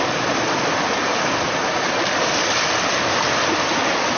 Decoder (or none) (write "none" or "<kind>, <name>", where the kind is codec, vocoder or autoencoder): none